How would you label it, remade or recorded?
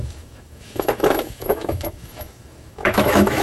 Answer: remade